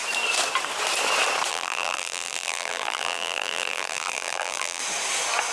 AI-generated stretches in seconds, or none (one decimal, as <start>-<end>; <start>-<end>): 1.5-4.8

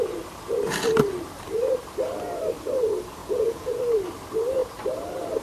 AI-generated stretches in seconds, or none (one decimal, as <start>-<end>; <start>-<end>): 3.2-3.8

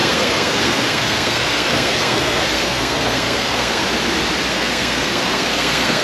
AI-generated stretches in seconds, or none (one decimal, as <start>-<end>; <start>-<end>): 0.0-3.8; 4.5-6.0

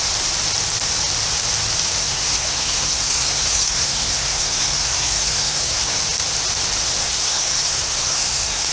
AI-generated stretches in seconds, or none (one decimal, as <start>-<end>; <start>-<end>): 2.0-6.0; 7.0-8.7

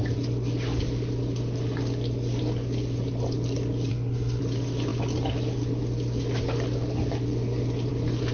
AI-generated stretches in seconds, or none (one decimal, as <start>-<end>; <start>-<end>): 3.9-4.4

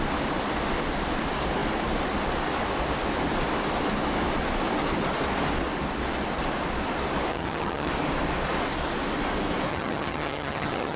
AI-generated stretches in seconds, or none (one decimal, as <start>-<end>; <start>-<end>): 7.3-7.9; 9.7-11.0

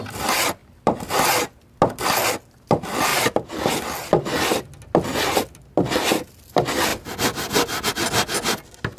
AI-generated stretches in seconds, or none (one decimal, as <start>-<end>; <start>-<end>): 0.6-1.5; 3.1-3.7; 6.9-7.9

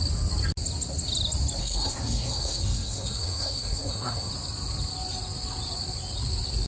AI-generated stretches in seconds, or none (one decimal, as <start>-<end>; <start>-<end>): 1.6-4.3